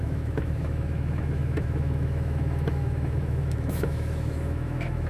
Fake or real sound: fake